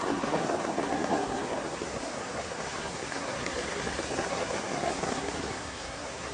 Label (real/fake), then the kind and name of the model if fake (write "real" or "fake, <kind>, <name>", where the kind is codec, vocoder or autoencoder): fake, codec, SNAC